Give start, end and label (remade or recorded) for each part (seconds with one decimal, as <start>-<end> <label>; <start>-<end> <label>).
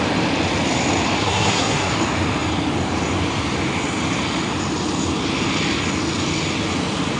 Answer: 0.0-1.2 recorded; 1.2-1.9 remade; 1.9-7.2 recorded